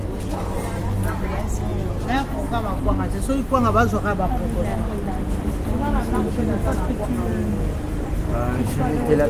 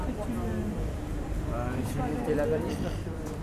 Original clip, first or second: first